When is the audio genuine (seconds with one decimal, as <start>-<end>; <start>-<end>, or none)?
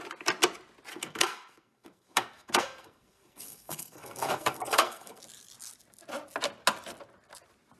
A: 0.0-0.9; 5.2-7.8